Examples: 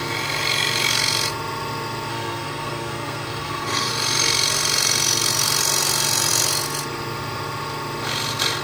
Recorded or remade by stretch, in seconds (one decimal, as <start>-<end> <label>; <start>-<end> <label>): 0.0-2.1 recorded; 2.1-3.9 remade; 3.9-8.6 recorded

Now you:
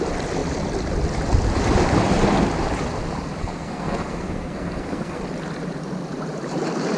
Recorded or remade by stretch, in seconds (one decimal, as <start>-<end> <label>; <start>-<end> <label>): 0.0-3.4 recorded; 3.4-5.2 remade; 5.2-7.0 recorded

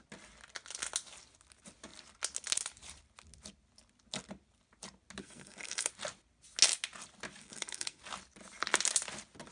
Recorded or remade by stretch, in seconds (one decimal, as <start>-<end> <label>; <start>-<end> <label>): 0.0-5.2 recorded; 5.2-5.9 remade; 5.9-7.4 recorded; 7.4-8.0 remade; 8.0-9.5 recorded

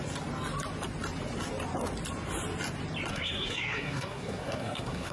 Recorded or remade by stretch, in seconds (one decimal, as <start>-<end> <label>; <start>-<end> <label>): 0.0-3.1 recorded; 3.1-5.1 remade

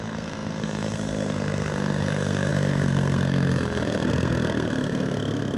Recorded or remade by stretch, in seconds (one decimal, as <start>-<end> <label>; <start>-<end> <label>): 0.0-5.6 remade

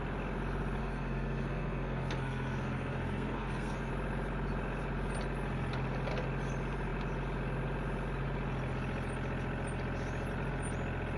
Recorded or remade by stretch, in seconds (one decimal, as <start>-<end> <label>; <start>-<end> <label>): 0.0-0.8 recorded; 0.8-3.9 remade; 3.9-11.2 recorded